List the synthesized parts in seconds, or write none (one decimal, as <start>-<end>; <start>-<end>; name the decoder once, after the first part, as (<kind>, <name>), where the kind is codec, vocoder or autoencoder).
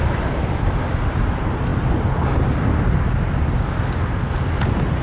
none